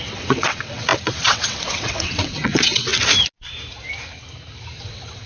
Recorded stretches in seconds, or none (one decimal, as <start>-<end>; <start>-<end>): 2.9-4.8